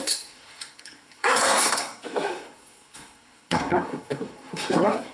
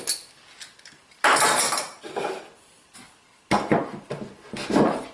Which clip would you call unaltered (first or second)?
second